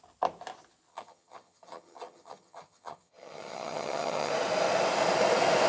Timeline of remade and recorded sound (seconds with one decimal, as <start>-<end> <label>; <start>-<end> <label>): 0.0-0.9 recorded; 0.9-4.3 remade; 4.3-5.7 recorded